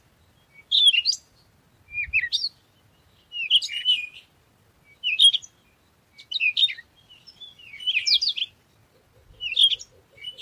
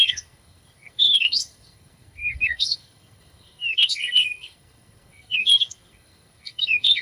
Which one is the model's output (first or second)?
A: second